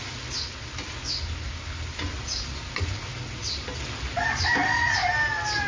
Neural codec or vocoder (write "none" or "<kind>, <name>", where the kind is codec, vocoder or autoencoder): none